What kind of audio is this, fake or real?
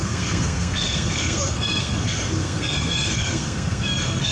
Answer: fake